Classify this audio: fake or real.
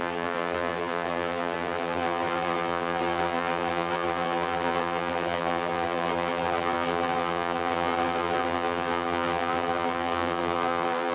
fake